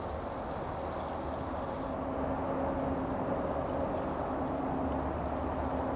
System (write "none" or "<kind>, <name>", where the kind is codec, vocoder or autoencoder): none